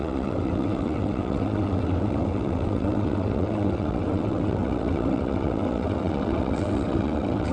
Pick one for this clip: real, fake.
fake